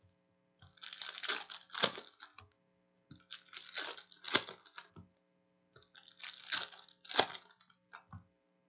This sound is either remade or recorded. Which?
recorded